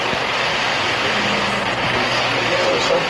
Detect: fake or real real